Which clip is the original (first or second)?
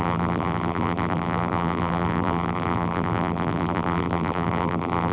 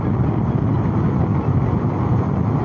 second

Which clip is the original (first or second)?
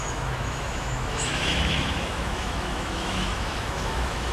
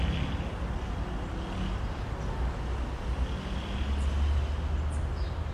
second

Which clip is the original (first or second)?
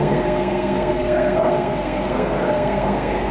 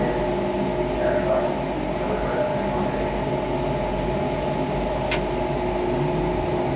second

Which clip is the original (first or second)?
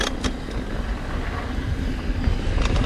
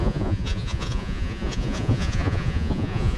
first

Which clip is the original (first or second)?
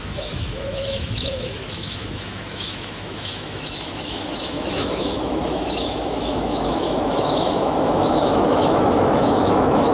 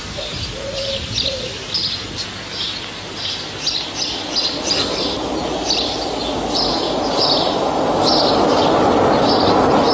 second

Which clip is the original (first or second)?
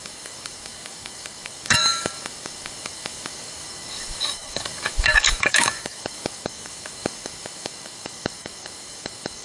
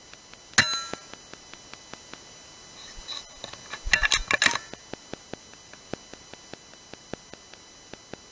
second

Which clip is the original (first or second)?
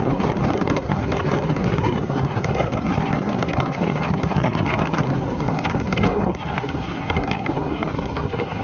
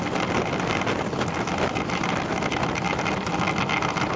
second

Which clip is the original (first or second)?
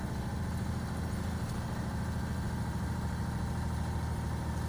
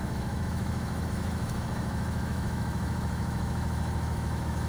first